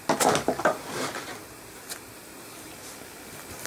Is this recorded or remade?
recorded